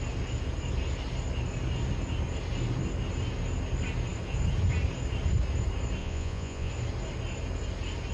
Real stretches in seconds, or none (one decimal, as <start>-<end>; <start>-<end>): 0.0-6.0; 6.7-8.1